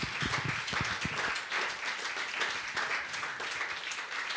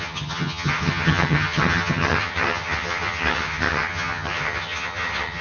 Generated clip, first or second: second